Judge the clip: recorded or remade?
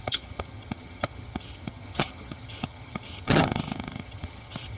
remade